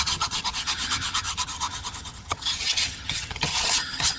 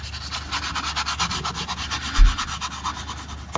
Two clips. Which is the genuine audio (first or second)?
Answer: second